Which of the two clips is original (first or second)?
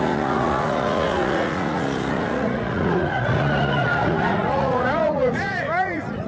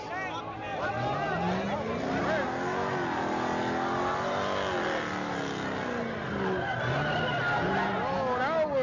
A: second